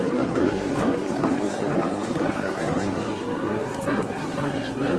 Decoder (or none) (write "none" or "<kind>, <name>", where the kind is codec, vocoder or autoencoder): codec, SNAC